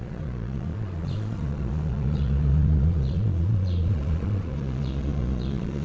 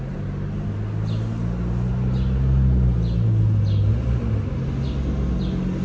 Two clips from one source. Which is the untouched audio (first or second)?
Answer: second